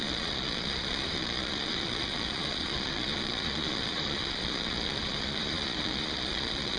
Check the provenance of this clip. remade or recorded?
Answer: remade